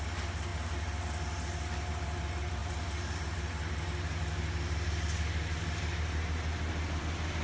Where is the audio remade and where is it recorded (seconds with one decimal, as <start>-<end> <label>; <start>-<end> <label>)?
0.0-7.4 recorded

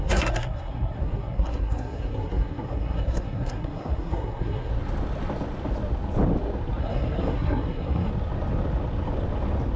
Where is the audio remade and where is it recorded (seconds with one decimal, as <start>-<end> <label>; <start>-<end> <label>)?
0.0-4.7 remade; 4.7-6.8 recorded; 6.8-8.1 remade; 8.1-9.8 recorded

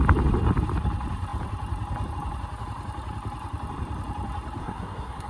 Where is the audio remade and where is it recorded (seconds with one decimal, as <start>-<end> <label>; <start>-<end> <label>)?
0.0-4.6 recorded; 4.6-5.3 remade

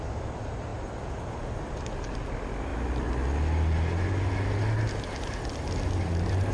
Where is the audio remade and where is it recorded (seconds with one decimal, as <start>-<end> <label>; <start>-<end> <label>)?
0.0-6.5 recorded